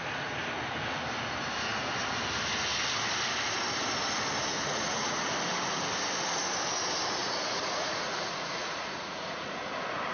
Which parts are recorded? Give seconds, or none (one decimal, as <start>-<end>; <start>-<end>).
0.0-4.5; 5.2-7.2